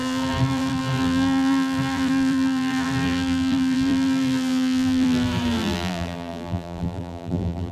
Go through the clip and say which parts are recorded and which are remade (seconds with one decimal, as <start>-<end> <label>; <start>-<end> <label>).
0.0-7.7 remade